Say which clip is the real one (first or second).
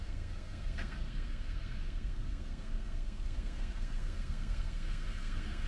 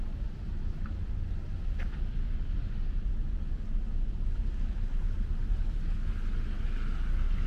second